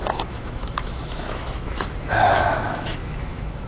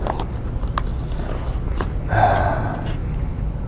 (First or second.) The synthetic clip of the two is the first